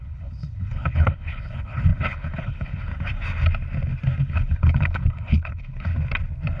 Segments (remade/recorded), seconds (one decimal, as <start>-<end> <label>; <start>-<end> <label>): 0.0-2.9 remade; 2.9-4.2 recorded; 4.2-5.9 remade; 5.9-6.6 recorded